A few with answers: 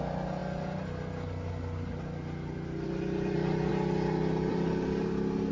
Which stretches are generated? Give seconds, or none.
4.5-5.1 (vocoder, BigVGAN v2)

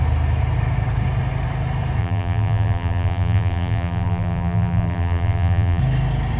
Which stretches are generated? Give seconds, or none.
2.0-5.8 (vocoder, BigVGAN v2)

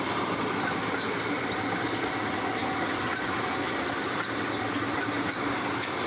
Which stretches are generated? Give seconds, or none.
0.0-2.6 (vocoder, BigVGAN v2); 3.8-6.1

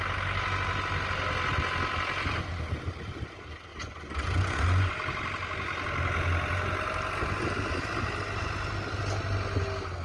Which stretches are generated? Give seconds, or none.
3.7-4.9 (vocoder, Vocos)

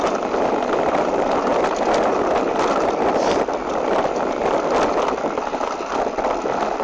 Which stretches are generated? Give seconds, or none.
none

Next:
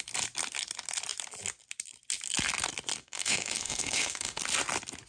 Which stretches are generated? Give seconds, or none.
3.0-4.4 (autoencoder, DAC-VAE)

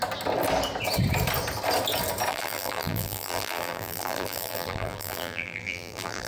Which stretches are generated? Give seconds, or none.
2.3-6.3 (vocoder, BigVGAN v2)